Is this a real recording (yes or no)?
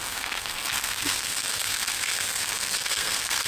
no